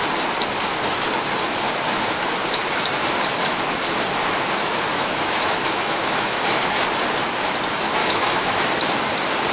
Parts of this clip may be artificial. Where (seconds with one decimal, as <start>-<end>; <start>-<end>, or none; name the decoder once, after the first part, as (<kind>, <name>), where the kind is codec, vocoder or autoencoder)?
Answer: 4.9-6.4 (autoencoder, DAC-VAE); 8.0-8.6

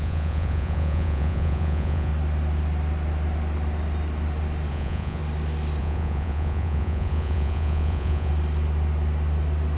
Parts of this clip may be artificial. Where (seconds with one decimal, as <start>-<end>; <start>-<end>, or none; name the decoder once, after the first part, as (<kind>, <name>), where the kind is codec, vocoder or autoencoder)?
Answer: 0.0-2.1 (vocoder, Vocos); 4.7-5.2; 5.8-8.3

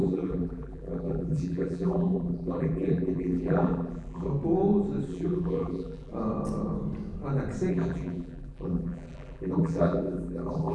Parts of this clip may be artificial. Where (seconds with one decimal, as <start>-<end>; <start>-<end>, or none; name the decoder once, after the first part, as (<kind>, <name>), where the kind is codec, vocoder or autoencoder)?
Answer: 0.0-4.3 (vocoder, BigVGAN v2); 5.1-6.1; 7.7-10.7

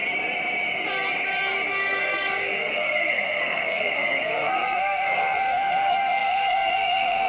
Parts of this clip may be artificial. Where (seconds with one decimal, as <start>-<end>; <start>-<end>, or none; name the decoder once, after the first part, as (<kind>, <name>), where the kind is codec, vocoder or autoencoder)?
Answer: 1.7-7.3 (codec, SNAC)

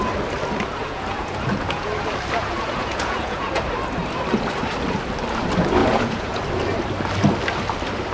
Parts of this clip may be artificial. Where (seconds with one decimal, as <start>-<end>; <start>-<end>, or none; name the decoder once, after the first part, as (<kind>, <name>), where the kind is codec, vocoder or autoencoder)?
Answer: 0.8-1.9 (vocoder, Vocos); 2.4-3.6; 5.8-6.4

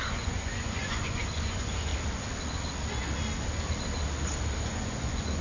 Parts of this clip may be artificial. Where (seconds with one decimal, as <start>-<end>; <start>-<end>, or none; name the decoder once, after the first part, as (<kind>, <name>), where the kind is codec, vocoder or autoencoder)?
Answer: 0.0-1.9 (vocoder, Vocos); 4.6-5.4

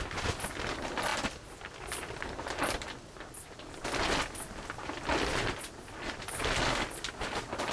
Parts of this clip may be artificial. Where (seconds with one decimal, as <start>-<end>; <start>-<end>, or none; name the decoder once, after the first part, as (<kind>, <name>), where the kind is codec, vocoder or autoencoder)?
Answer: none